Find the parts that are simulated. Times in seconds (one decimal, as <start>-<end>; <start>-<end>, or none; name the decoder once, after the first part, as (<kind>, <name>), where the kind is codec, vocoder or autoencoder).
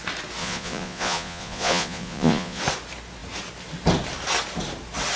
0.4-2.6 (vocoder, Vocos)